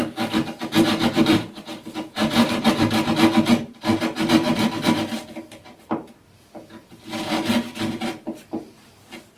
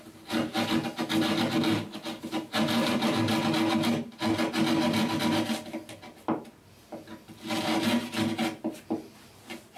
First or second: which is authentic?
second